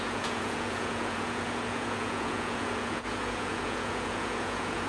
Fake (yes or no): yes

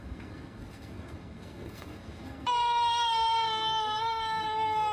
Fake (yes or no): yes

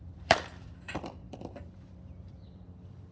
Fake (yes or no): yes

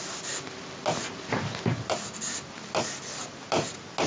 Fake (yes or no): no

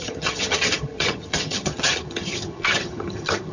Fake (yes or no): yes